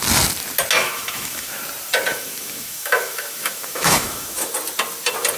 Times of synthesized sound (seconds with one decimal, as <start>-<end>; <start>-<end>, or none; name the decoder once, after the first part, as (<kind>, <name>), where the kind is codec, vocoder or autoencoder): 0.8-1.6 (autoencoder, DAC-VAE); 2.1-4.5